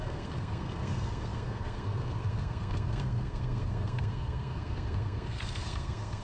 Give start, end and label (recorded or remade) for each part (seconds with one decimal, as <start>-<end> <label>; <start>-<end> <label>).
0.0-6.2 remade